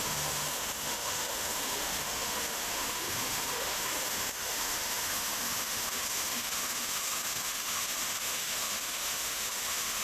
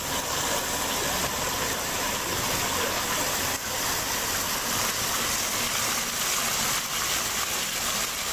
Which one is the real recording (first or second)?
second